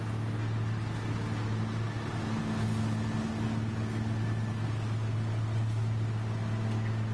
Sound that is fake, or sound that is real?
real